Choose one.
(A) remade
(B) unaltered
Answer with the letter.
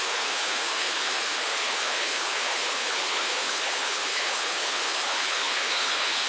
A